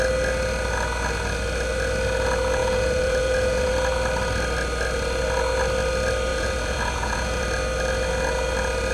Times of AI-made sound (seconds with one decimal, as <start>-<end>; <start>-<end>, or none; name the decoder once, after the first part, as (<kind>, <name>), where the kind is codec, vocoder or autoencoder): 2.6-3.7 (vocoder, Vocos); 6.3-7.4